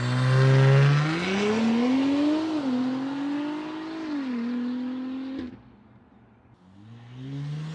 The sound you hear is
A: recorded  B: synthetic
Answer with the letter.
A